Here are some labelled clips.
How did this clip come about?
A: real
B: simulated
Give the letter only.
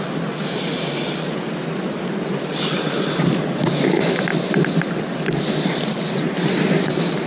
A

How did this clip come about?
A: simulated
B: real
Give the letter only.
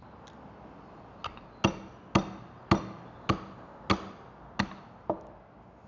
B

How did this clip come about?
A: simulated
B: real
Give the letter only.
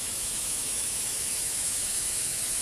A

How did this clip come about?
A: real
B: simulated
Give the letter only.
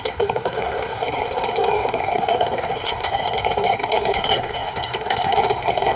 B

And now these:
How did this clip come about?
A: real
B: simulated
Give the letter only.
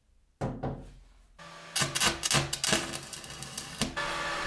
A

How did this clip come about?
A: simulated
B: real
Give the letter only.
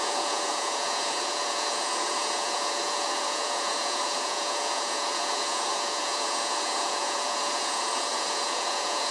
A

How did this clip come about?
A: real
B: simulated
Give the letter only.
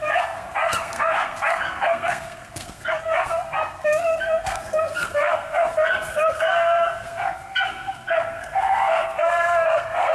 B